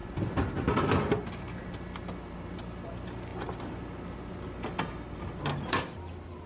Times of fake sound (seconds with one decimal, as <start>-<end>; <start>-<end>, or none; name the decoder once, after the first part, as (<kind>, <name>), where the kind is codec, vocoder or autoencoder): none